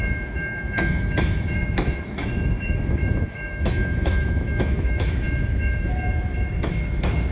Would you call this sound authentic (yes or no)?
no